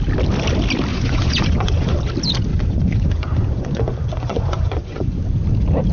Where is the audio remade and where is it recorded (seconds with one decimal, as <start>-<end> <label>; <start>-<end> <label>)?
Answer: 0.0-0.9 recorded; 0.9-2.1 remade; 2.1-2.5 recorded; 2.5-5.2 remade; 5.2-5.9 recorded